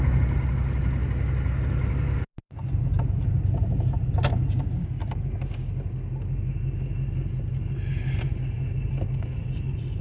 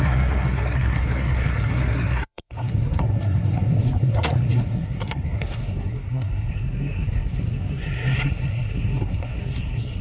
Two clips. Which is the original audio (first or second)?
first